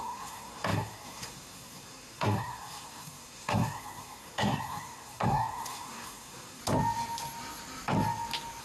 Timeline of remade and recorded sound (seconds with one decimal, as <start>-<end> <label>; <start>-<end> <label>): 0.0-6.6 remade; 6.6-8.6 recorded